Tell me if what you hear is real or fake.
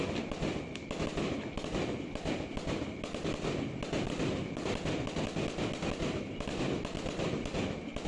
real